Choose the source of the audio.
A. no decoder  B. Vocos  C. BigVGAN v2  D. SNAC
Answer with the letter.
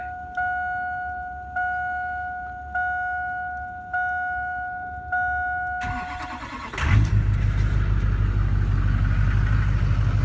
A